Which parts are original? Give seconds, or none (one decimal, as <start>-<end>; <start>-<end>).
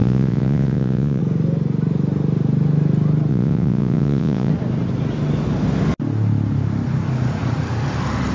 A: 1.2-3.3; 4.5-8.3